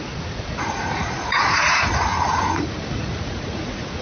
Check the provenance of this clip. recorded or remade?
remade